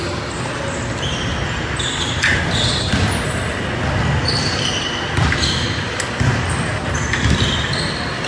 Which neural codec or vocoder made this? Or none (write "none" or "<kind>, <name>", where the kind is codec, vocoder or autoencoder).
none